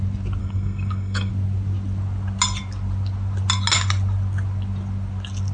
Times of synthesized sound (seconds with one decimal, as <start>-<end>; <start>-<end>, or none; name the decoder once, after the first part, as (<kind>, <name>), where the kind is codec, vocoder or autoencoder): 0.4-1.3 (codec, SNAC)